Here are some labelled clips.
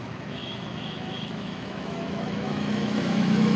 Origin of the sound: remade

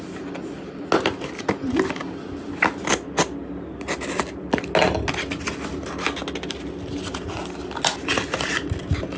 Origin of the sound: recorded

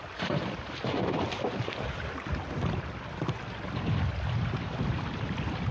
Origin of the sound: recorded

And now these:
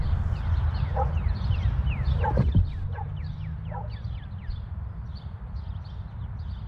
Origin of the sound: recorded